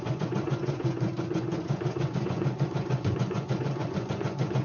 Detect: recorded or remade remade